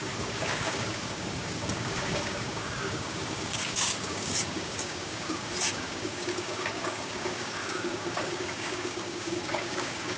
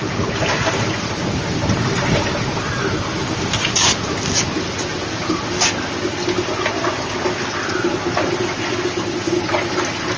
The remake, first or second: first